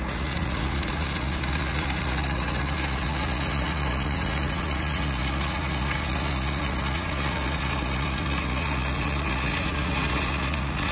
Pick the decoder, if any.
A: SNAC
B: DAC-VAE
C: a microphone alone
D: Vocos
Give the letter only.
D